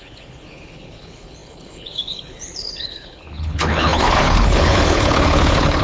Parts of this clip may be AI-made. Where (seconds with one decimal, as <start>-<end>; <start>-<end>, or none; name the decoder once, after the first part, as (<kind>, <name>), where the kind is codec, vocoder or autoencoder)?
0.0-5.8 (codec, HILCodec)